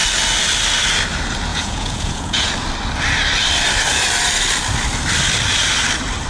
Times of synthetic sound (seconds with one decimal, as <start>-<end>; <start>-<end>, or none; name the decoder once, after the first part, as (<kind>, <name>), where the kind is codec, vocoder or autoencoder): 1.5-2.5 (vocoder, Vocos)